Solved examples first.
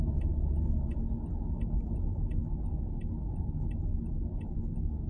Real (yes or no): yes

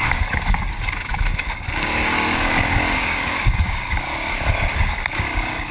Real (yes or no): no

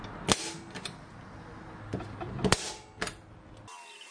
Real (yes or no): yes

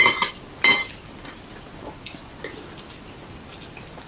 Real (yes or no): yes